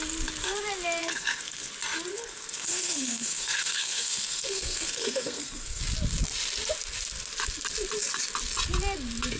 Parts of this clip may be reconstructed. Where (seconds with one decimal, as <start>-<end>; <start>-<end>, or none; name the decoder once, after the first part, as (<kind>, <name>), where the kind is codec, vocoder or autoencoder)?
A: 1.0-1.7 (codec, SNAC); 2.1-5.8